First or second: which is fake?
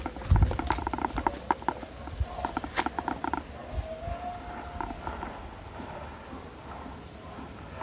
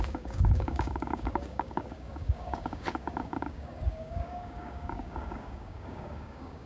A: second